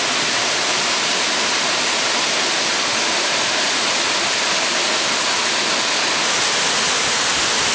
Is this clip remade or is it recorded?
remade